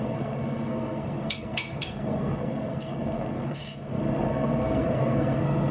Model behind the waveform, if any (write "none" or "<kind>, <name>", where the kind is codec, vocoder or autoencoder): codec, SNAC